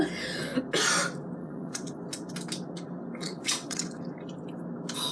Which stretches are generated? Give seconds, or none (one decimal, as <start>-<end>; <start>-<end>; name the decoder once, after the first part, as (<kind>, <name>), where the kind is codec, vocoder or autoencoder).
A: 1.4-1.9 (vocoder, WaveNeXt); 3.2-4.0